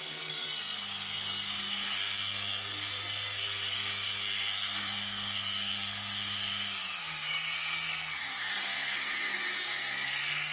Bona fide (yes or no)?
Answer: no